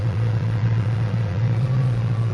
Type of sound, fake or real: fake